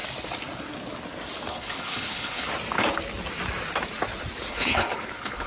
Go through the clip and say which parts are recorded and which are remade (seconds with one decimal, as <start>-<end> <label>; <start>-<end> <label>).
0.0-1.5 recorded; 1.5-2.5 remade; 2.5-4.5 recorded; 4.5-5.5 remade